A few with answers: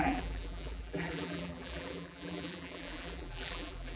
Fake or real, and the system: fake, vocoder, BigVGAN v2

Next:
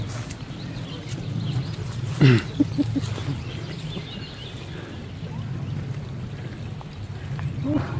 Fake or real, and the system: real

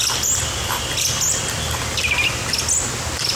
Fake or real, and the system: real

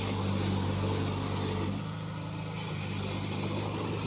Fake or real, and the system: real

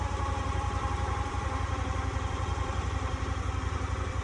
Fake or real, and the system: fake, vocoder, BigVGAN v2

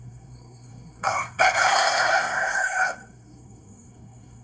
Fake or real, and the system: fake, codec, SNAC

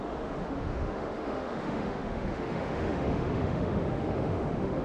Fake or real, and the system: fake, autoencoder, DAC-VAE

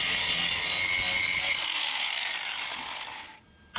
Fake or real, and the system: real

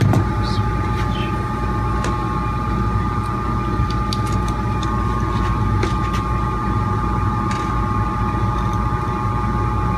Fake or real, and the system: real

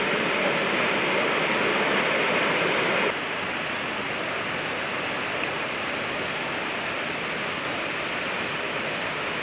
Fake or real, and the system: real